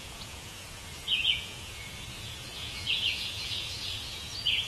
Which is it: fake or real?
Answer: fake